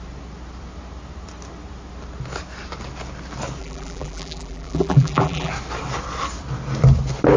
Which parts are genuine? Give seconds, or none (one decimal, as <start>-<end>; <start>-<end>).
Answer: 0.0-3.6; 5.5-7.4